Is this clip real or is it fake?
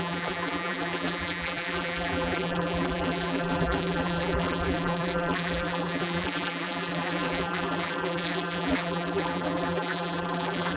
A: fake